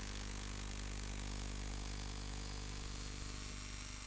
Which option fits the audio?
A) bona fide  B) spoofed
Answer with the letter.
B